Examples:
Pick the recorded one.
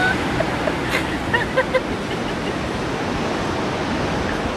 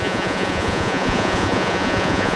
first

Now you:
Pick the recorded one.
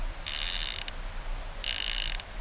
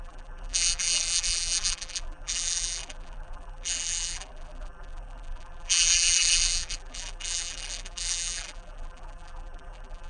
first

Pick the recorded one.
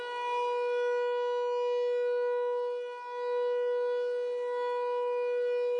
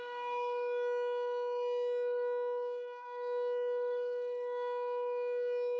first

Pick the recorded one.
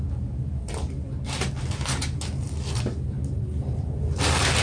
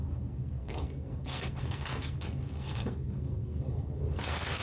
first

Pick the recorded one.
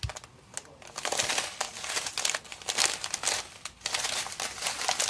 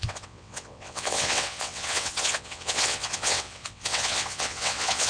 first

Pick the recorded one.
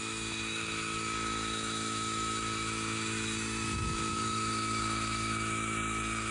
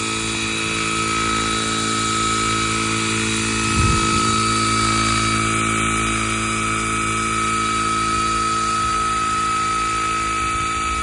second